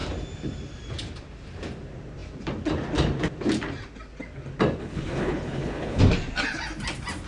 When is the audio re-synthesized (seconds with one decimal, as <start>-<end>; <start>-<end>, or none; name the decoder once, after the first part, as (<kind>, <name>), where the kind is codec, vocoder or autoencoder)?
4.8-6.0 (codec, HILCodec)